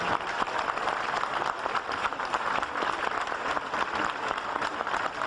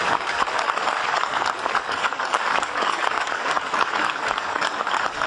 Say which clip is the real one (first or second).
first